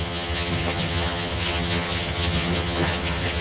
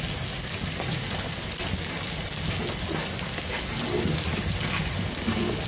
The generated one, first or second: first